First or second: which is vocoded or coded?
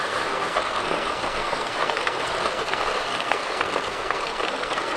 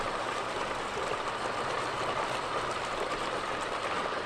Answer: first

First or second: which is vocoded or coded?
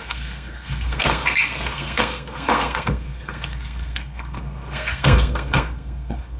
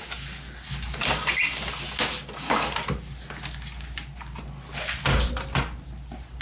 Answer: first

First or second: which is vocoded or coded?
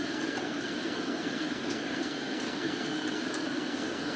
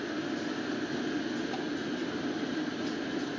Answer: first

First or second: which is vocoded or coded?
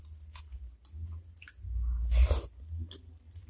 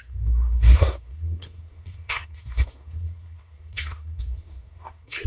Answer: second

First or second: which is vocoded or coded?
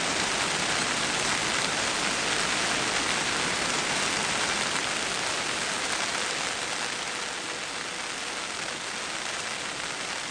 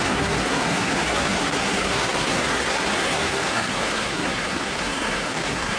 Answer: second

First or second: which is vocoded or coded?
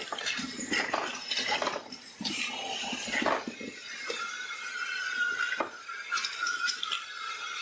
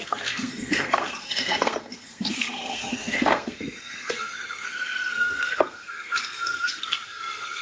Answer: second